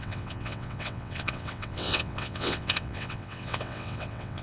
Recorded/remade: remade